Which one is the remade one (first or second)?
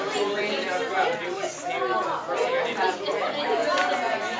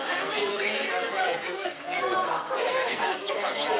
second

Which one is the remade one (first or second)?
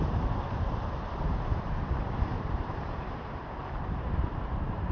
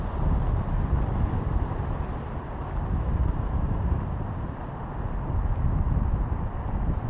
first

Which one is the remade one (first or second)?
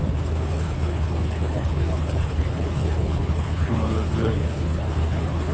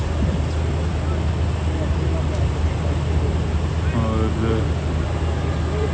first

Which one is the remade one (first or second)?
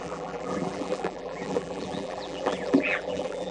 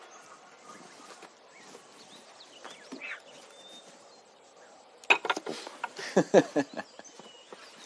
first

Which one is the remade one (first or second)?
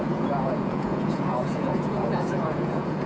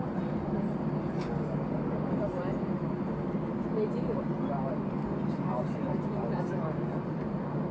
first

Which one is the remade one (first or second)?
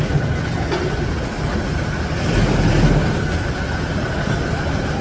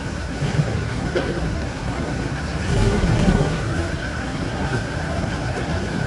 second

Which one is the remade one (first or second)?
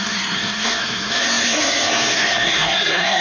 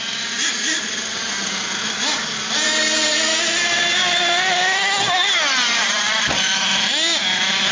first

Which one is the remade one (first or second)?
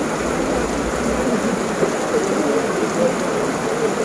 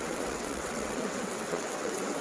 second